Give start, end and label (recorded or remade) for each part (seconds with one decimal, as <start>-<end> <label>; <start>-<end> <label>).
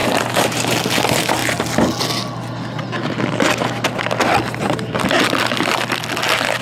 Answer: 0.0-0.8 remade; 0.8-6.6 recorded